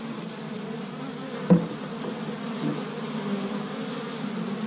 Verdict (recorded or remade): recorded